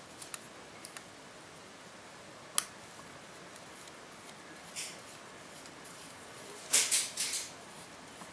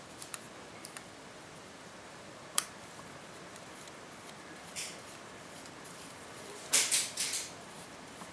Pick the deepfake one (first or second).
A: second